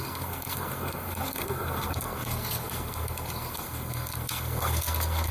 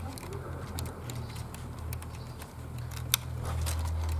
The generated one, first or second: first